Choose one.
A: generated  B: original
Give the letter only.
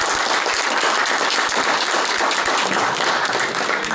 B